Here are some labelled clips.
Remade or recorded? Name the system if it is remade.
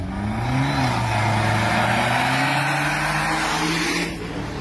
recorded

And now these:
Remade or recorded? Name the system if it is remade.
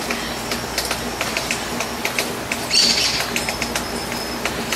remade, vocoder, BigVGAN v2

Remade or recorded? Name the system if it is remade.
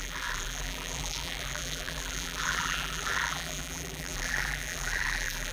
remade, vocoder, BigVGAN v2